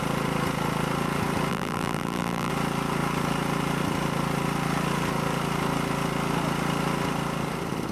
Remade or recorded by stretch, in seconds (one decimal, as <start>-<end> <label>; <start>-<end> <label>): 0.0-1.5 recorded; 1.5-2.5 remade; 2.5-7.9 recorded